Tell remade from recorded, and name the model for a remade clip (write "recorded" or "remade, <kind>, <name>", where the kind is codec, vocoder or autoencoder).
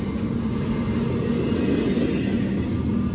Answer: recorded